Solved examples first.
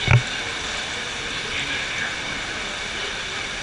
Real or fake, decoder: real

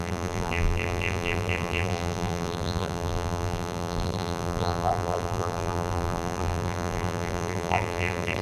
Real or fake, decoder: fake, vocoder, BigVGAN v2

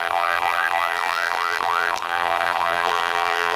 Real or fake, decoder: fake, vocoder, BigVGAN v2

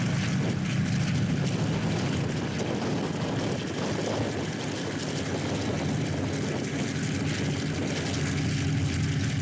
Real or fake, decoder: real